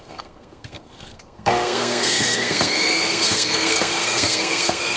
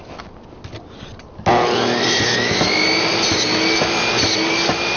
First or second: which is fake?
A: first